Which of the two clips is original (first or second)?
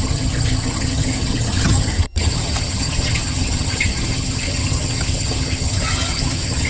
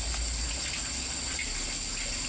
second